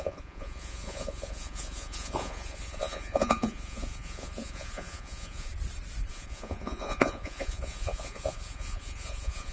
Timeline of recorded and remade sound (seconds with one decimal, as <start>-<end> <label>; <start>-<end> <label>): 0.0-5.5 remade; 5.5-6.1 recorded; 6.1-9.5 remade